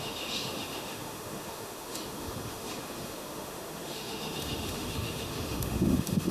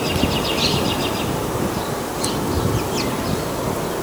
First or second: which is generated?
first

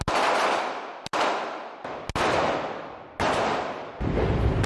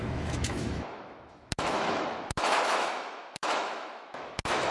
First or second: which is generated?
second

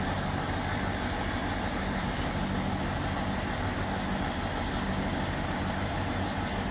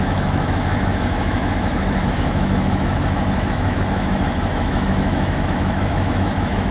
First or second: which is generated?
second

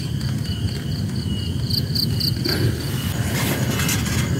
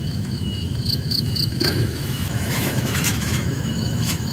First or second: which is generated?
second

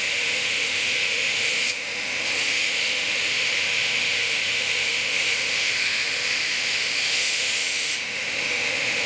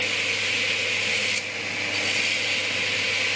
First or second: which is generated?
first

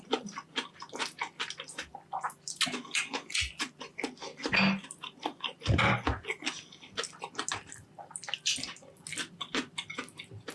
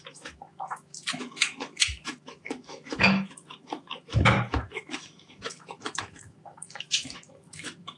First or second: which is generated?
second